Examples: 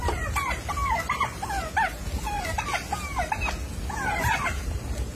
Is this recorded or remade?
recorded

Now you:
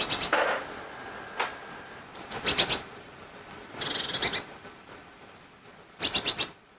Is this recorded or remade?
recorded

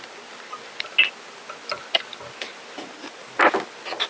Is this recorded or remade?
recorded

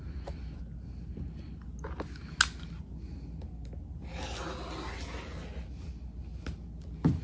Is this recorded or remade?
recorded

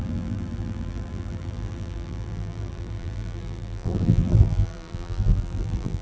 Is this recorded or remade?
remade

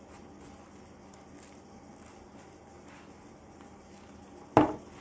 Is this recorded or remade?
recorded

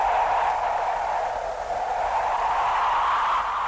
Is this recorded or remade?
recorded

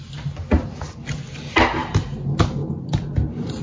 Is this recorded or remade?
recorded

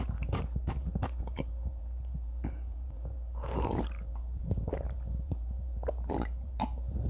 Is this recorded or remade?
remade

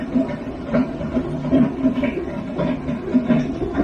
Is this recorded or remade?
remade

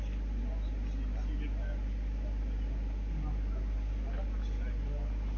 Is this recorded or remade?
recorded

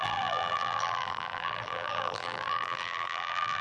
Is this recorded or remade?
remade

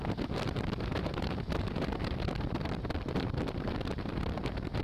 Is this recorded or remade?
remade